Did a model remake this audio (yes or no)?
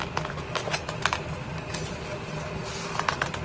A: no